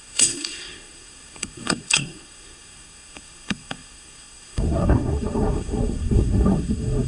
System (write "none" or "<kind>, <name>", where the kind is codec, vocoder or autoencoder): codec, SNAC